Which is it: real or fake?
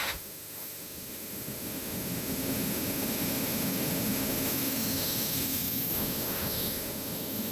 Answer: fake